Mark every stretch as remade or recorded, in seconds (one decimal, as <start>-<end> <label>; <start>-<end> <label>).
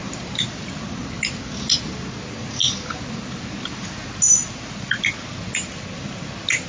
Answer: 0.0-6.7 recorded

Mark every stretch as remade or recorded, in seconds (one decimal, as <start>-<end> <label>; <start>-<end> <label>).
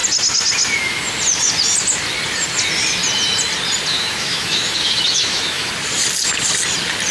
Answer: 0.0-3.9 recorded; 3.9-5.7 remade; 5.7-7.1 recorded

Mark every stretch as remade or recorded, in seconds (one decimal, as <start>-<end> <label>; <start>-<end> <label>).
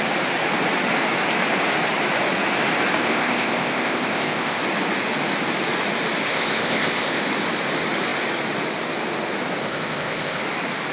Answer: 0.0-3.0 recorded; 3.0-4.6 remade; 4.6-6.3 recorded; 6.3-7.2 remade; 7.2-9.6 recorded; 9.6-10.4 remade; 10.4-10.9 recorded